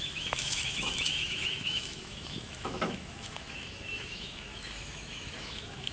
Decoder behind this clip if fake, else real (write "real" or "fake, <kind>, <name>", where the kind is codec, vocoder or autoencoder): fake, autoencoder, DAC-VAE